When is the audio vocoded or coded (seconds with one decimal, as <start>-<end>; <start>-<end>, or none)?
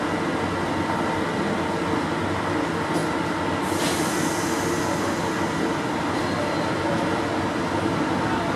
none